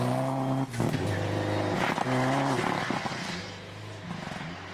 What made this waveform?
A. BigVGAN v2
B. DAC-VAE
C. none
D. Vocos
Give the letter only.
C